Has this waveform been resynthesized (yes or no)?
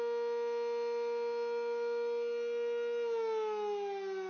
no